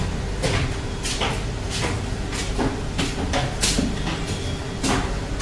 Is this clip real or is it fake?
real